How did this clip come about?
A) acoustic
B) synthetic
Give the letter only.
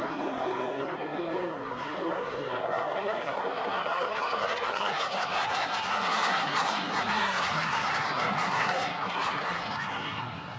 B